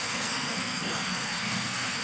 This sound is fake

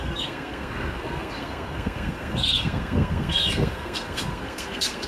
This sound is fake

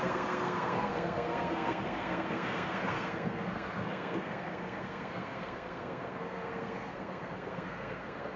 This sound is fake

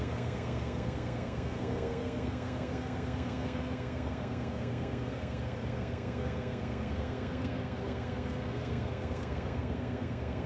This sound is fake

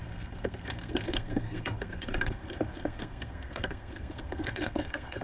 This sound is fake